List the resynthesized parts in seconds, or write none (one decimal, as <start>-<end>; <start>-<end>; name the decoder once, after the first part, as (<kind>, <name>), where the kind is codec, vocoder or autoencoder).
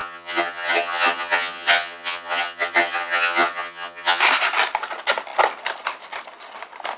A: 0.0-4.2 (vocoder, HiFi-GAN)